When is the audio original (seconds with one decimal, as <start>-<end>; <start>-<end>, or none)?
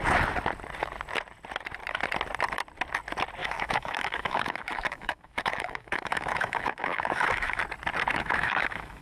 0.0-3.4; 7.6-8.1